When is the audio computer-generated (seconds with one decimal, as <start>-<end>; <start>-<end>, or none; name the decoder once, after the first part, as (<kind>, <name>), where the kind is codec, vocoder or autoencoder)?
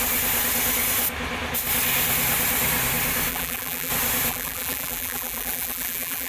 3.3-3.9 (vocoder, BigVGAN v2); 4.3-6.3